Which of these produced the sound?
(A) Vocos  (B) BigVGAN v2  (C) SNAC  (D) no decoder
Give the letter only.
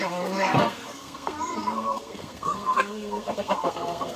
C